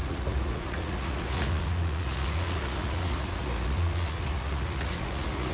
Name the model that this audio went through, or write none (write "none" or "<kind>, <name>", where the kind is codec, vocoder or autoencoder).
vocoder, Vocos